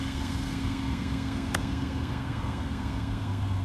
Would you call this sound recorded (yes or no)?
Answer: no